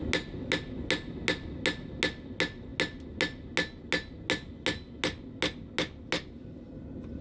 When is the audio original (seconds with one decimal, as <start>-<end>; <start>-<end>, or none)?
0.0-7.2